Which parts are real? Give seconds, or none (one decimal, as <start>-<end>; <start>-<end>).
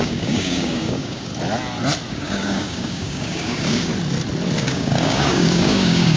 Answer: 1.3-2.1; 3.9-4.6